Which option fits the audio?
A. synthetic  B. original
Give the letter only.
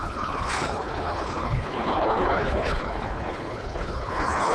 A